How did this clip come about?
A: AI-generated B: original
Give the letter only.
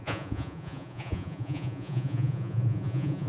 A